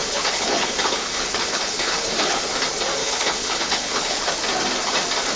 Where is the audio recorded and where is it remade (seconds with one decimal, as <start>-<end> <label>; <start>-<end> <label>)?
0.0-2.4 remade; 2.4-3.0 recorded; 3.0-4.3 remade; 4.3-5.4 recorded